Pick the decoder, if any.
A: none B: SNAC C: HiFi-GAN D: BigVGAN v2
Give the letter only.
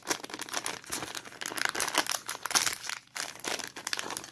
A